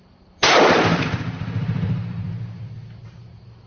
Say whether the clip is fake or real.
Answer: fake